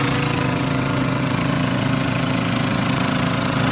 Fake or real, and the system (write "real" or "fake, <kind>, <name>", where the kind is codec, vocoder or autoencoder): fake, vocoder, WaveNeXt